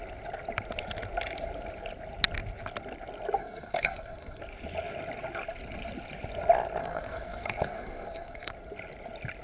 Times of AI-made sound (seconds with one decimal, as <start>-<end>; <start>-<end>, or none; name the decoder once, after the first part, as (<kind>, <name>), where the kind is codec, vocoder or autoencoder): 3.4-4.4 (codec, SNAC); 6.8-8.5